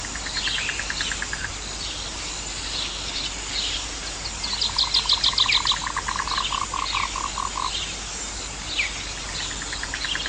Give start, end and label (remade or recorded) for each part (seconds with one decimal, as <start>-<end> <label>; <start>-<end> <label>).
0.0-4.0 remade; 4.0-9.1 recorded; 9.1-10.3 remade